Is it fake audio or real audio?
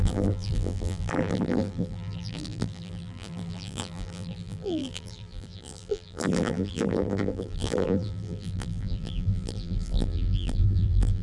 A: fake